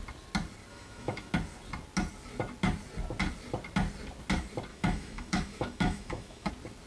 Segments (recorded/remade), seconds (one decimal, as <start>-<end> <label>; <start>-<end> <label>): 0.0-0.7 recorded; 0.7-1.3 remade; 1.3-4.7 recorded; 4.7-6.5 remade; 6.5-6.9 recorded